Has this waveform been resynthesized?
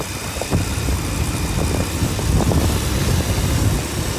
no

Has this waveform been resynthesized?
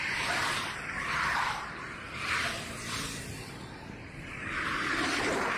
yes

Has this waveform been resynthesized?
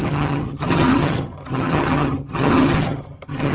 yes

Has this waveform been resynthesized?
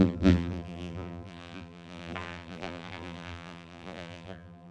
yes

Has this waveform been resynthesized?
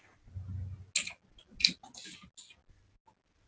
no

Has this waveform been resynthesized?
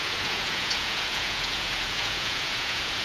yes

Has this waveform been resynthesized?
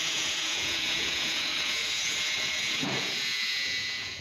yes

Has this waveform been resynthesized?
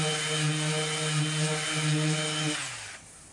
no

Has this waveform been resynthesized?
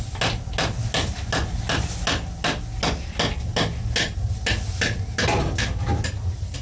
no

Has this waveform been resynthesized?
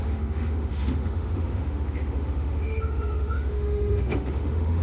yes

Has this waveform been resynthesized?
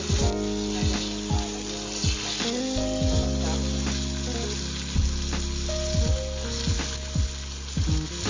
no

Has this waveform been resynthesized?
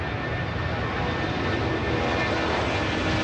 no